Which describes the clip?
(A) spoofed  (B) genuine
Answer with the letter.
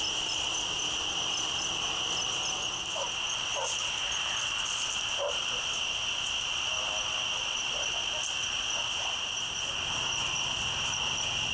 B